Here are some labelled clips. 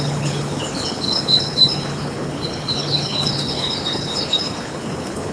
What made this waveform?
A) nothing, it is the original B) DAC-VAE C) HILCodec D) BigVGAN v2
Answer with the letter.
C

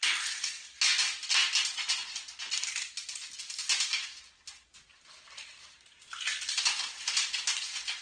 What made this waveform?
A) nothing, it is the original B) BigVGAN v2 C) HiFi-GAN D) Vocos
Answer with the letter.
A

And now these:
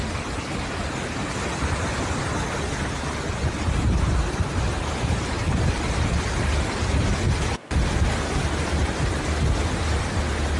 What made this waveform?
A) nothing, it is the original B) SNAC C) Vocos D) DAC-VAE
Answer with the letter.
A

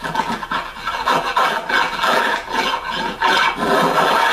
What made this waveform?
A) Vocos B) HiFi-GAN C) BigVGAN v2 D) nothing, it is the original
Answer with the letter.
C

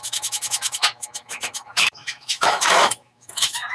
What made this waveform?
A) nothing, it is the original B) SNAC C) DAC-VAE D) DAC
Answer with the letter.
C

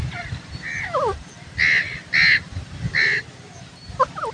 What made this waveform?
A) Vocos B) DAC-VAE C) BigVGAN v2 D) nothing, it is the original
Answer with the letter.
D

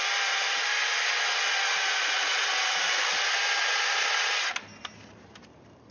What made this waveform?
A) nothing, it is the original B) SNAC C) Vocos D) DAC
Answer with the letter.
A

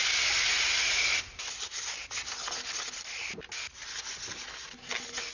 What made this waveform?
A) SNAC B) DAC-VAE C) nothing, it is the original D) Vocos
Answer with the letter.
C